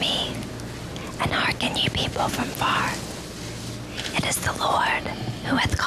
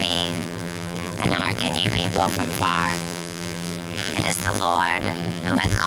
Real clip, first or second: first